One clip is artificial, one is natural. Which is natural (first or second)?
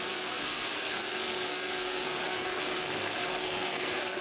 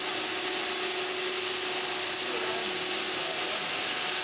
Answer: second